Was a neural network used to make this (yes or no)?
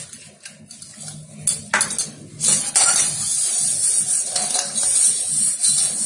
no